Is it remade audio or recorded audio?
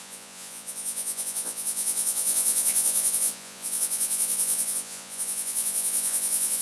remade